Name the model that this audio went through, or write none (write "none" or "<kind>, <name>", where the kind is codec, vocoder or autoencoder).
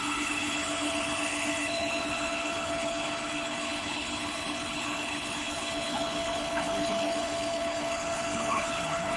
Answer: codec, HILCodec